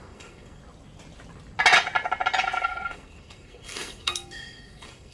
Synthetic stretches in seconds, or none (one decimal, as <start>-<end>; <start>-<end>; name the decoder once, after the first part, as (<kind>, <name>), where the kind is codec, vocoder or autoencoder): 0.0-0.6 (codec, SNAC); 2.4-5.1

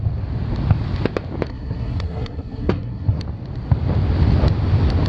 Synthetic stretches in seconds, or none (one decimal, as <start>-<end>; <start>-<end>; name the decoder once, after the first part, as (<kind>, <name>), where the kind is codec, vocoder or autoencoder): 1.5-3.2 (codec, SNAC)

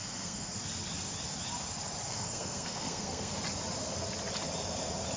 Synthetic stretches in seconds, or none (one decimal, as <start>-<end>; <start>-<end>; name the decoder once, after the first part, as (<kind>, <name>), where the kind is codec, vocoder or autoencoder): 0.0-0.5 (codec, SNAC); 2.1-3.3

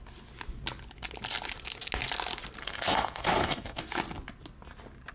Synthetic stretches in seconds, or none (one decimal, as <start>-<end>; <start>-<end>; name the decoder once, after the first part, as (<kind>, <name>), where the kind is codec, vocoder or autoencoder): 2.6-3.8 (codec, SNAC)

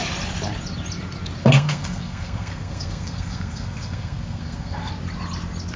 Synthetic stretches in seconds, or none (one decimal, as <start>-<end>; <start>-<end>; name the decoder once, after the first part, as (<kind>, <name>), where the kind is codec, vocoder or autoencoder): 1.4-4.9 (codec, SNAC)

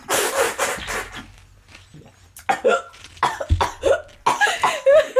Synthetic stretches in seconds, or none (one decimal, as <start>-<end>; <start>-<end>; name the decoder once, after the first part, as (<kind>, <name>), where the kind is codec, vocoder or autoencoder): none

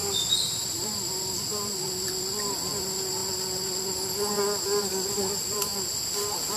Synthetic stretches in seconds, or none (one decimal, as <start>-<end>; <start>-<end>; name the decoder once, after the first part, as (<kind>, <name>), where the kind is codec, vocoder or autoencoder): none